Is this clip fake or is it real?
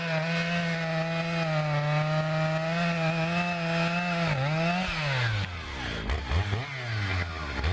real